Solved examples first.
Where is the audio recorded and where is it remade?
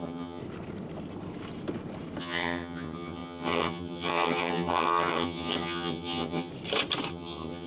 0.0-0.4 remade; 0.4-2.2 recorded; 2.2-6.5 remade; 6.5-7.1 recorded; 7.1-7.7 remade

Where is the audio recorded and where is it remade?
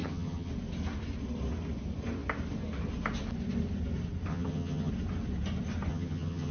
0.0-0.5 remade; 0.5-4.3 recorded; 4.3-4.9 remade; 4.9-5.9 recorded; 5.9-6.5 remade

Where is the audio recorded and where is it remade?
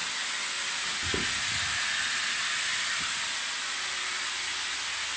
0.0-5.2 recorded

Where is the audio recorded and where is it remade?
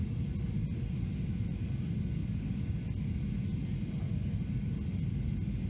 0.0-5.7 recorded